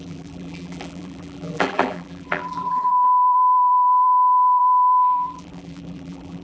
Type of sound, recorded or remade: remade